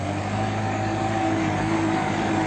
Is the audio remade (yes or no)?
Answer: yes